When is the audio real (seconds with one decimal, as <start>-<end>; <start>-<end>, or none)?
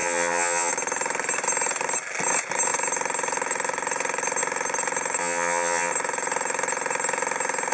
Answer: 0.7-5.2; 5.9-7.7